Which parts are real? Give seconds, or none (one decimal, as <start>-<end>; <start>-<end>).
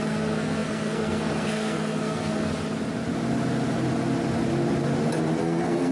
2.5-5.4